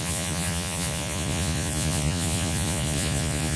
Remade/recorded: remade